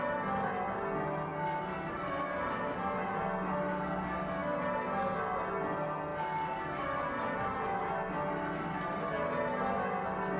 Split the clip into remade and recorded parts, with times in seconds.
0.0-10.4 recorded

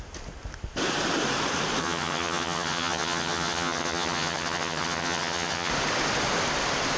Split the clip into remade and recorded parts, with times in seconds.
0.0-1.8 recorded; 1.8-5.7 remade; 5.7-7.0 recorded

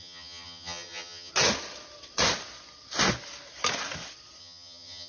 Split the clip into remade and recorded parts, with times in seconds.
0.0-1.3 remade; 1.3-4.4 recorded; 4.4-5.1 remade

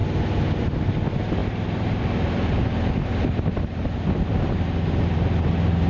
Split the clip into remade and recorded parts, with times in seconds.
0.0-5.9 recorded

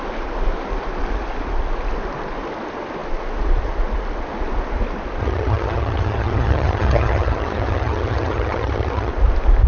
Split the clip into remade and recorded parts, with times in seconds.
0.0-5.2 recorded; 5.2-9.1 remade; 9.1-9.7 recorded

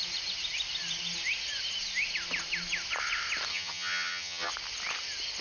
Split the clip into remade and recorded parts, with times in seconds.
0.0-3.5 recorded; 3.5-4.5 remade; 4.5-5.4 recorded